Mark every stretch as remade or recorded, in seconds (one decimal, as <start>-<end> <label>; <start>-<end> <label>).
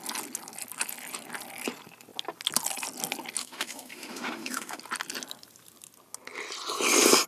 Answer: 0.0-3.4 recorded; 3.4-4.8 remade; 4.8-7.3 recorded